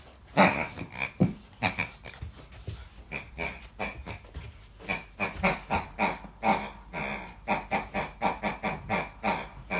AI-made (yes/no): no